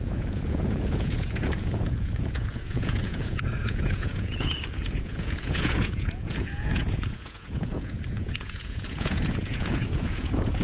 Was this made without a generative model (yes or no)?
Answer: no